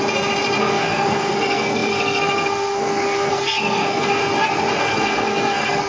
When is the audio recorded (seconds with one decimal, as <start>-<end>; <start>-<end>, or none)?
0.0-0.6; 4.2-4.8